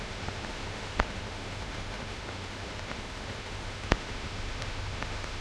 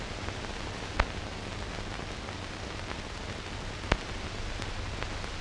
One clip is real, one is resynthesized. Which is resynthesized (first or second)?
first